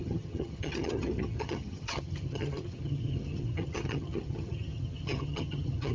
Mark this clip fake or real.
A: fake